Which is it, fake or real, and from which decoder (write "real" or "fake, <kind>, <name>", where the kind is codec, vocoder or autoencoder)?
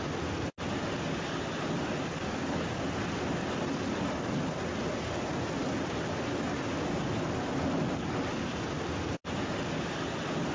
real